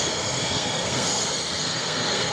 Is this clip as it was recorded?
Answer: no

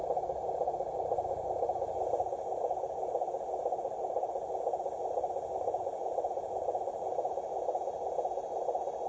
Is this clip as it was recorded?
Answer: no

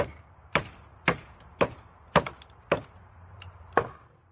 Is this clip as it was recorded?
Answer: no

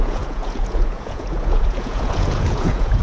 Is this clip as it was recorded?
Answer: no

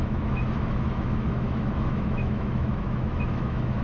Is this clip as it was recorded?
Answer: no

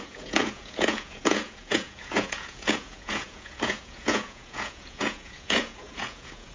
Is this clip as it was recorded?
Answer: no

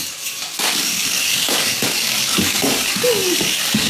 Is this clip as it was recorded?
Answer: no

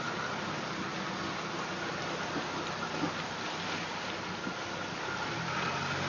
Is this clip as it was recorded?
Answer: yes